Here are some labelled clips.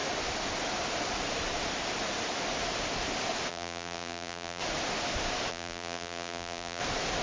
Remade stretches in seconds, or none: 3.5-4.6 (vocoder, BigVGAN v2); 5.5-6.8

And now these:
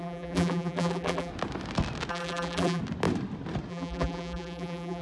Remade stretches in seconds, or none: 0.0-1.3 (vocoder, BigVGAN v2); 2.1-2.8; 3.7-5.0

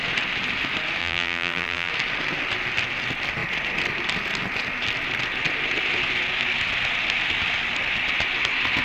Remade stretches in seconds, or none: 1.0-1.9 (vocoder, BigVGAN v2)

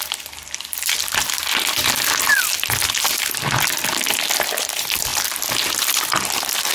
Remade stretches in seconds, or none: 0.0-1.4 (vocoder, BigVGAN v2); 4.6-5.1; 5.8-6.7

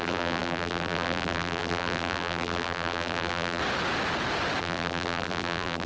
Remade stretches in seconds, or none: 0.0-3.6 (vocoder, BigVGAN v2); 4.6-5.9